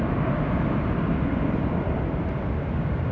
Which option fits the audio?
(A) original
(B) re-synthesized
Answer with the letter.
A